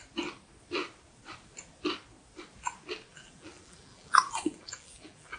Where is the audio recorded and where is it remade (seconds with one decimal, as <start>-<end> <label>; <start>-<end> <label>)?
0.0-3.1 recorded; 3.1-5.4 remade